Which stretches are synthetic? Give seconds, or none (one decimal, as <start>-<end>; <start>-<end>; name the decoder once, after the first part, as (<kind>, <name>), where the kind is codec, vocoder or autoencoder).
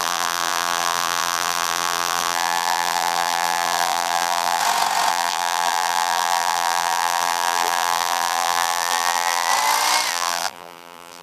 0.0-4.6 (vocoder, BigVGAN v2); 5.1-9.5; 10.1-11.2